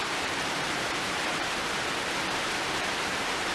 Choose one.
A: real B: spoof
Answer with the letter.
B